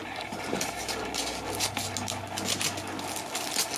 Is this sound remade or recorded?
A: recorded